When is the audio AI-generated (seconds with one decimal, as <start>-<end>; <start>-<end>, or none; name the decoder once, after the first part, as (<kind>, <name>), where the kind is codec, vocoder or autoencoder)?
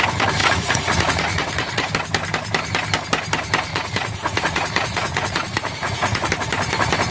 0.4-1.9 (vocoder, Vocos); 3.7-6.3